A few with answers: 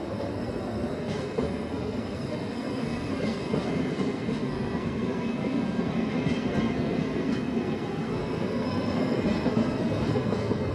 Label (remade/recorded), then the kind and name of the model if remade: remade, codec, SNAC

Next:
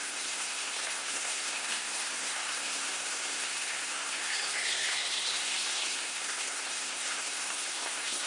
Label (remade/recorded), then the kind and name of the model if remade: remade, codec, SNAC